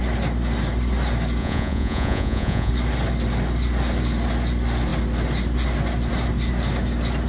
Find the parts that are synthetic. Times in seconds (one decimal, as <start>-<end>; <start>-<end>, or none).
1.4-2.7